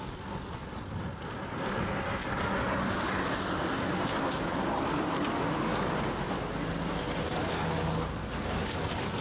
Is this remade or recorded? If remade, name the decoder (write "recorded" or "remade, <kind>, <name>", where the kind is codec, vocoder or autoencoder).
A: recorded